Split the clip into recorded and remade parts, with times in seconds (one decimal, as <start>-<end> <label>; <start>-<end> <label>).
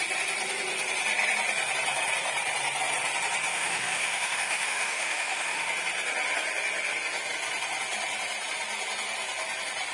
0.0-3.5 recorded; 3.5-5.7 remade; 5.7-9.9 recorded